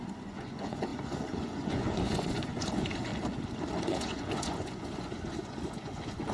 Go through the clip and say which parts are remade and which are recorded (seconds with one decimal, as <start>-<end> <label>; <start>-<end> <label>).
0.0-3.1 remade; 3.1-3.8 recorded; 3.8-6.3 remade